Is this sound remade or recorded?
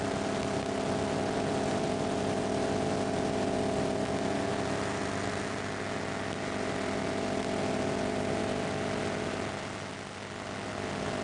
recorded